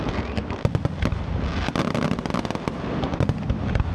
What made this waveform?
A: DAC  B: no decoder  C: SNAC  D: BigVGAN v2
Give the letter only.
B